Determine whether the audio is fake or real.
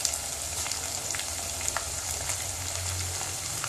real